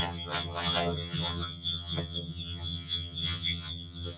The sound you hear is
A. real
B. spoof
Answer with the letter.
B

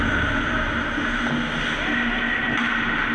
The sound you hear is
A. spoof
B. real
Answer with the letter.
B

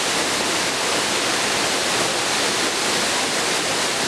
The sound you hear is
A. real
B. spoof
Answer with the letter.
A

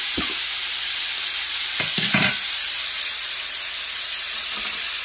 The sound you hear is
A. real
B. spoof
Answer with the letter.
B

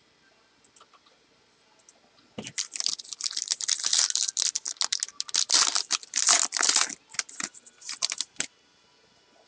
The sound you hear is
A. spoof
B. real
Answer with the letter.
B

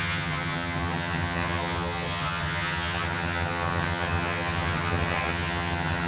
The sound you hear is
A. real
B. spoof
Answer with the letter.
B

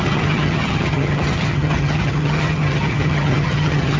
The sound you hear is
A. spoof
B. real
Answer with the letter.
A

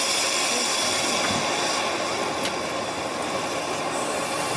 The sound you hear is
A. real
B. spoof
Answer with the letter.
A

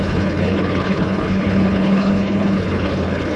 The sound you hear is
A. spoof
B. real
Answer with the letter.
A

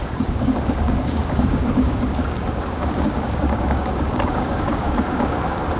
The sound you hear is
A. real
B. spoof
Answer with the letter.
B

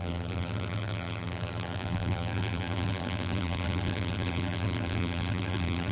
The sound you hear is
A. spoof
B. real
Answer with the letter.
A